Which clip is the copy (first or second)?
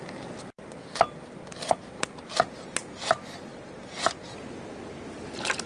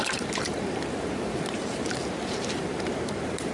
second